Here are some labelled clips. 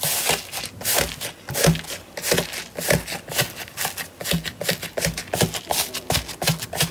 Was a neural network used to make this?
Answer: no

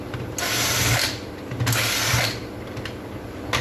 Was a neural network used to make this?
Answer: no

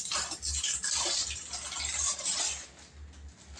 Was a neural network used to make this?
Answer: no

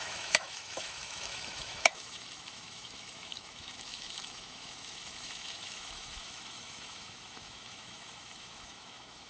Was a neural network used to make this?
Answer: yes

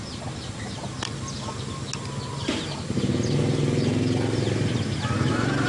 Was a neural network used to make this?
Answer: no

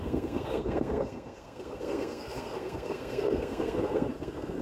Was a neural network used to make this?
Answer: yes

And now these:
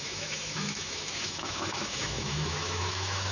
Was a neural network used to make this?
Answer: yes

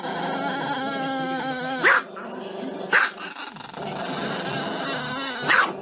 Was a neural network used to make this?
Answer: no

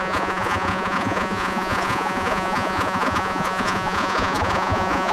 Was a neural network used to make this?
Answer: yes